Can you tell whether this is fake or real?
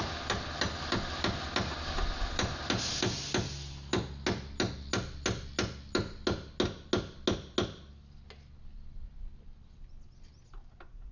real